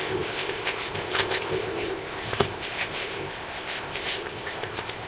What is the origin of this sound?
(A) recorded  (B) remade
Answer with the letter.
B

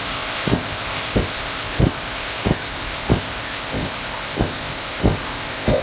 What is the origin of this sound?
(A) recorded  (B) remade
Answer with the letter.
B